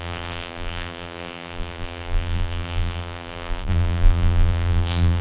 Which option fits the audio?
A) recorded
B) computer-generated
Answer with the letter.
B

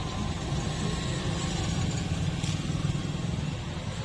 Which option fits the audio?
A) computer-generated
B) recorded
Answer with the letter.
B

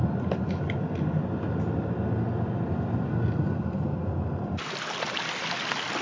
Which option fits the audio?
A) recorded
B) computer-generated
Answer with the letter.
A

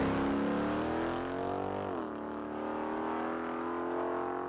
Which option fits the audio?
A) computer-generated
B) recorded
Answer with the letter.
B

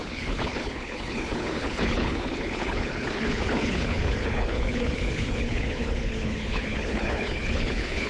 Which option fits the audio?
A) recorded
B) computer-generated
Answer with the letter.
B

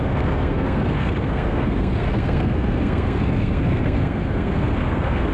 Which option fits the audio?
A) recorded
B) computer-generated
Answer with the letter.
B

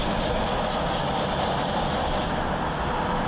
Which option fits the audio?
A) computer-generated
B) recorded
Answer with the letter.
B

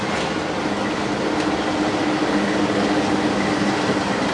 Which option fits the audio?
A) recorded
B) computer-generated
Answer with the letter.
A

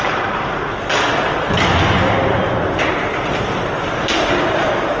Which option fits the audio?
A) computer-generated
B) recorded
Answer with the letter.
B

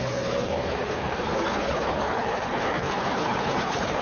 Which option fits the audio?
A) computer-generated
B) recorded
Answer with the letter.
A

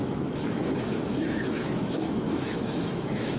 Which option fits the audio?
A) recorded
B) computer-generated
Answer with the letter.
B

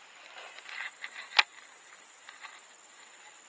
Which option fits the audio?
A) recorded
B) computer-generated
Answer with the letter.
A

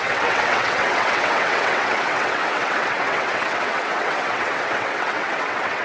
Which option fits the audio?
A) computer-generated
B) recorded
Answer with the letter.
A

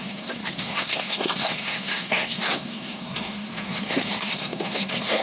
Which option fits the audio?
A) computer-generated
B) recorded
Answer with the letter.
A